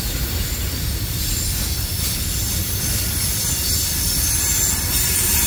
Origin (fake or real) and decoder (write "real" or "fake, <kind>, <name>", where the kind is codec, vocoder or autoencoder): real